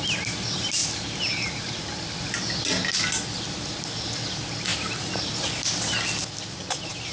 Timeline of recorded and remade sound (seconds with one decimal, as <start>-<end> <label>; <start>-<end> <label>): 0.0-4.7 recorded; 4.7-5.7 remade; 5.7-7.1 recorded